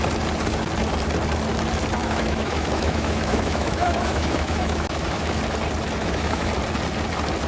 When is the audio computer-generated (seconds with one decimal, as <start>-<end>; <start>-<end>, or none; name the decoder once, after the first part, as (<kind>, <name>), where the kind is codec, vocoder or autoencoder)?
2.0-5.4 (autoencoder, DAC-VAE); 6.0-6.5